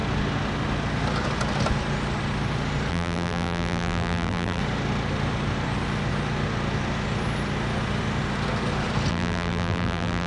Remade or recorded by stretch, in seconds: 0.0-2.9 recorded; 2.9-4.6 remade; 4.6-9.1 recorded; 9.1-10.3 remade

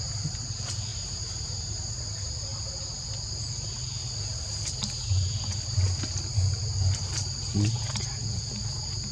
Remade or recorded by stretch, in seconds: 0.0-0.9 recorded; 0.9-1.9 remade; 1.9-9.1 recorded